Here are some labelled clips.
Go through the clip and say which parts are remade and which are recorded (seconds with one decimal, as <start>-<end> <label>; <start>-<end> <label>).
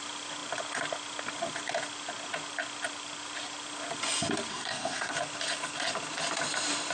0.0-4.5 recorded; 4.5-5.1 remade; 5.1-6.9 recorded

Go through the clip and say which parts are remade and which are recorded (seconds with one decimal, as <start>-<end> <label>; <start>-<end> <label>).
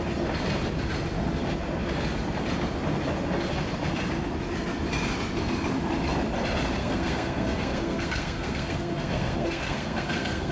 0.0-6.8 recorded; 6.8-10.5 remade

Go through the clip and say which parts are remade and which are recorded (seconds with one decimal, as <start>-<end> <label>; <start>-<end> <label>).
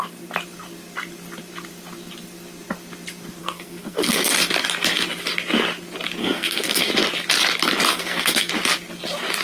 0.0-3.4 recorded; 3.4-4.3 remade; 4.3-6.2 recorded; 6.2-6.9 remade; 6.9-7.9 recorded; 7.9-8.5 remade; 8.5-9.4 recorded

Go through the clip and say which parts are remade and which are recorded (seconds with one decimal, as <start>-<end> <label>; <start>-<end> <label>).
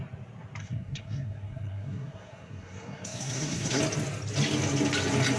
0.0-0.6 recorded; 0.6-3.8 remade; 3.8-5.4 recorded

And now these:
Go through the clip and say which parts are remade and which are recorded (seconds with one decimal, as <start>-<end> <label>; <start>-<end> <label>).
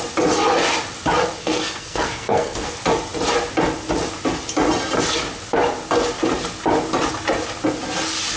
0.0-1.4 recorded; 1.4-2.7 remade; 2.7-8.4 recorded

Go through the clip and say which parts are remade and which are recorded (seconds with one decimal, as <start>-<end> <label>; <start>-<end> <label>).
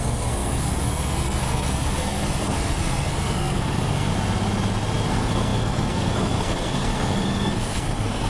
0.0-4.1 remade; 4.1-5.1 recorded; 5.1-8.3 remade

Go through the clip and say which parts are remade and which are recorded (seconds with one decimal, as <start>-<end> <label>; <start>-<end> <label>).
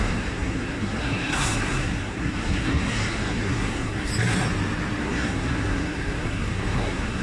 0.0-4.1 remade; 4.1-5.0 recorded; 5.0-7.2 remade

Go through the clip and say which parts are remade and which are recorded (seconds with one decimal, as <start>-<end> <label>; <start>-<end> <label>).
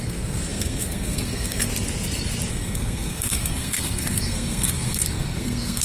0.0-1.7 remade; 1.7-2.5 recorded; 2.5-5.8 remade